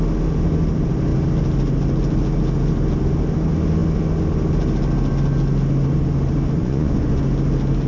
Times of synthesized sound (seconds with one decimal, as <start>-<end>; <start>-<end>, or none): 6.6-7.2